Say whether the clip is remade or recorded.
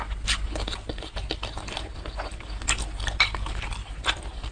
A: recorded